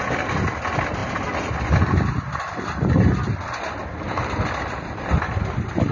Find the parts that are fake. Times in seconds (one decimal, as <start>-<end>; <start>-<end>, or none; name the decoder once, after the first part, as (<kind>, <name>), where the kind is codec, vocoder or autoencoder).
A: none